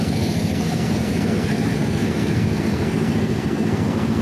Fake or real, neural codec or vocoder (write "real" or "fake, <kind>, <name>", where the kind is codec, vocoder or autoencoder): fake, codec, SNAC